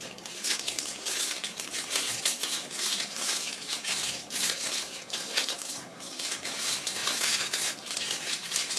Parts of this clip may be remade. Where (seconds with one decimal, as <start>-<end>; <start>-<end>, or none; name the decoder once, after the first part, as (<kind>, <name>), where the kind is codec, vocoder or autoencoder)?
0.0-8.8 (codec, SNAC)